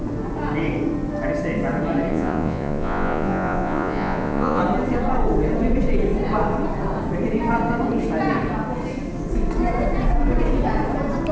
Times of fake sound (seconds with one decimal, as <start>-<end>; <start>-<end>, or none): 2.1-4.6